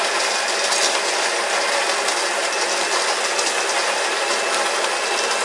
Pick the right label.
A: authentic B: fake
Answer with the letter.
A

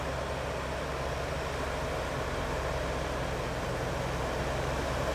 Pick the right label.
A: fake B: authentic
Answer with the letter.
B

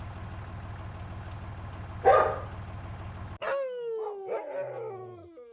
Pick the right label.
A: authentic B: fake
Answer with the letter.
A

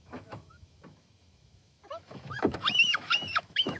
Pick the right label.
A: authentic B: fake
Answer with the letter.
B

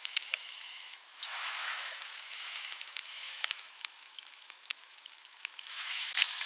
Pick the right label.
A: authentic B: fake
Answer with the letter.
B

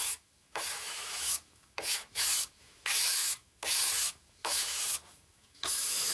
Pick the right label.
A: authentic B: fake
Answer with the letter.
B